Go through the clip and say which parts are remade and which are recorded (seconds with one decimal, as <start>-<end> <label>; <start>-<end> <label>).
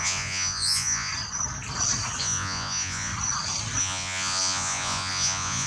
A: 0.0-1.1 remade; 1.1-2.2 recorded; 2.2-3.1 remade; 3.1-3.8 recorded; 3.8-5.7 remade